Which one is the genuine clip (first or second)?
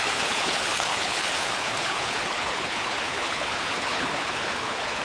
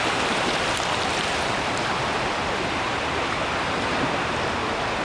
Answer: second